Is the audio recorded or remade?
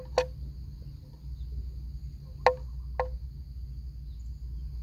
recorded